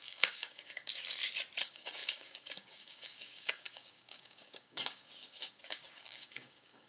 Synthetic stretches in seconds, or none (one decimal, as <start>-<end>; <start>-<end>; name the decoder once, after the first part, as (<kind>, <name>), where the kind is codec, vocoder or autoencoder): 0.0-0.9 (codec, DAC); 1.6-6.9